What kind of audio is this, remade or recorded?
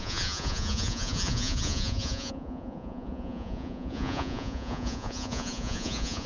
remade